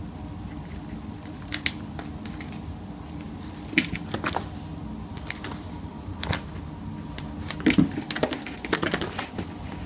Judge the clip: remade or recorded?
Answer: recorded